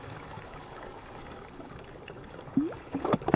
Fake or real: fake